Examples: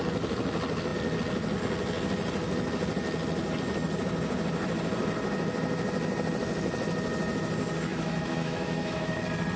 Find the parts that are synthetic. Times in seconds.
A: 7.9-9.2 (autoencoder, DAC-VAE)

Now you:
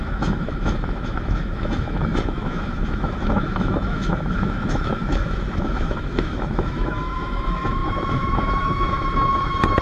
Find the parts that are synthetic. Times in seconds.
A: 0.0-9.8 (autoencoder, DAC-VAE)

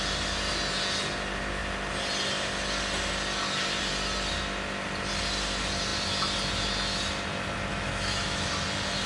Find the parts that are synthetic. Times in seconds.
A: 7.7-8.5 (autoencoder, DAC-VAE)

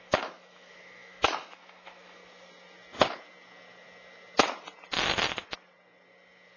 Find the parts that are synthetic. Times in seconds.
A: 0.0-2.2 (autoencoder, DAC-VAE)